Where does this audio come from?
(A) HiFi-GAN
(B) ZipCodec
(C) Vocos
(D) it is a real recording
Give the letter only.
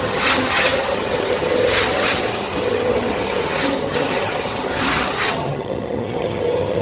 A